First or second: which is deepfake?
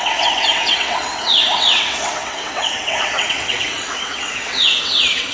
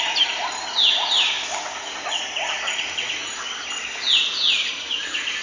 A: first